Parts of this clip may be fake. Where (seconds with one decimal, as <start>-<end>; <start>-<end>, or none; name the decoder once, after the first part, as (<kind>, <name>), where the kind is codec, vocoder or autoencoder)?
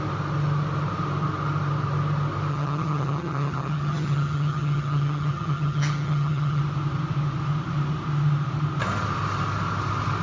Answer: 2.5-6.6 (vocoder, HiFi-GAN)